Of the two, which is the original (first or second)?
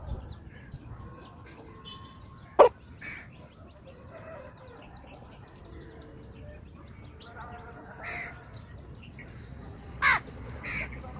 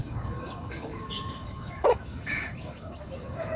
first